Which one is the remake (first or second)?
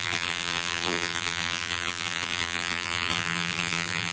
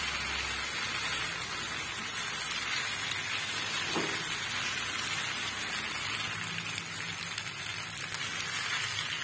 first